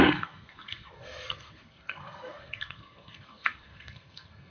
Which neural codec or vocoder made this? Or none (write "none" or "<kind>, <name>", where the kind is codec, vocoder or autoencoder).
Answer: codec, SNAC